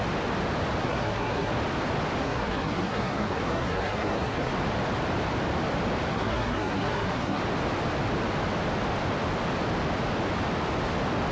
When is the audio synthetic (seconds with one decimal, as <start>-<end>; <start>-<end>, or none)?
0.8-1.5; 2.2-4.5; 6.1-7.4